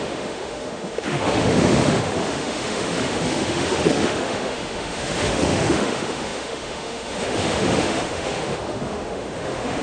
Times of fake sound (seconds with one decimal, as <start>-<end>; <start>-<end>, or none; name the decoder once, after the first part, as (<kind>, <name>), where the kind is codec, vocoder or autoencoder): 0.0-9.8 (autoencoder, DAC-VAE)